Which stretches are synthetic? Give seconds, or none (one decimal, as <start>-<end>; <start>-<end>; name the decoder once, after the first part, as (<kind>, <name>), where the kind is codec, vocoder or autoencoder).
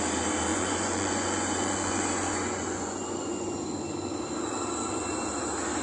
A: 0.5-3.5 (vocoder, Vocos)